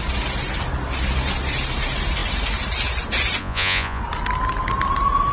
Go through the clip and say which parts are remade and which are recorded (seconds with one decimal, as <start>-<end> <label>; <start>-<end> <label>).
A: 0.0-3.4 recorded; 3.4-4.0 remade; 4.0-5.3 recorded